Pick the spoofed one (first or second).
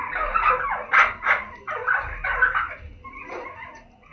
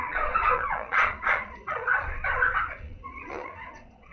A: second